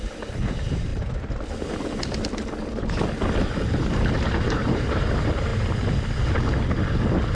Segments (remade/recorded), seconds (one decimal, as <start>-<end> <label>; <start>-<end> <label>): 0.0-0.9 remade; 0.9-3.5 recorded; 3.5-5.5 remade; 5.5-7.3 recorded